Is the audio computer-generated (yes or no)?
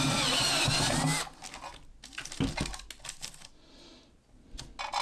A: no